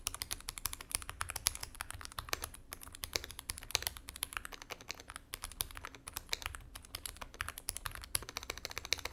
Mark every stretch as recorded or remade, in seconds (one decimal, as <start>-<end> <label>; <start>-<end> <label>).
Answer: 0.0-1.6 recorded; 1.6-3.3 remade; 3.3-9.1 recorded